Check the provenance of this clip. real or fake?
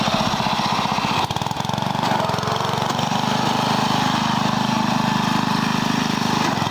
real